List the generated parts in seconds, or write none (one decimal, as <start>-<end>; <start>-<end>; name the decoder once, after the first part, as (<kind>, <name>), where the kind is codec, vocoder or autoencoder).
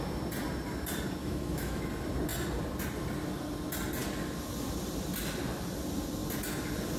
1.2-1.8 (autoencoder, DAC-VAE)